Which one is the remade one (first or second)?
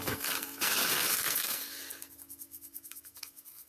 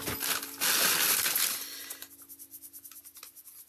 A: first